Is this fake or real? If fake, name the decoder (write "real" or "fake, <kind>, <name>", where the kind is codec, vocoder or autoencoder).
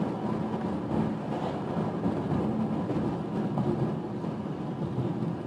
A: real